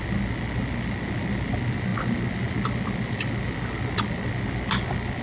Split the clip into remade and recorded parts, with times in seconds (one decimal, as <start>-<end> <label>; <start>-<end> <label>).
0.0-5.2 recorded